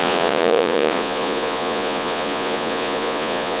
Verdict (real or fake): fake